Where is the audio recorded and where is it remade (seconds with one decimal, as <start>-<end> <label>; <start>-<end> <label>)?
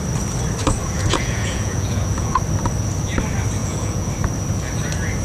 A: 0.0-0.8 recorded; 0.8-2.4 remade; 2.4-3.6 recorded; 3.6-4.1 remade; 4.1-5.2 recorded